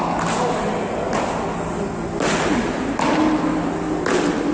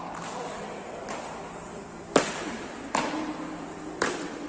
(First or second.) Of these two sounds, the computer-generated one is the second